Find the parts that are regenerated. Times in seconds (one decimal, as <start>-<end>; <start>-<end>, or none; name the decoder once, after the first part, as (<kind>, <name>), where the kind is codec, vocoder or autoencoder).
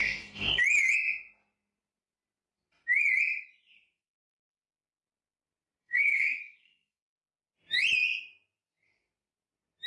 0.0-0.6 (codec, SNAC); 5.8-7.0